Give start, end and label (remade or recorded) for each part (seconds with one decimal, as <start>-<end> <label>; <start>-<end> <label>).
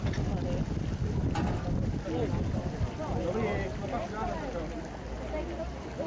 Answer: 0.0-6.1 recorded